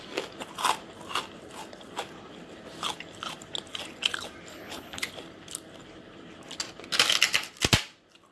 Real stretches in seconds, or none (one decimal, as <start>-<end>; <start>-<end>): 0.0-4.5; 5.1-8.3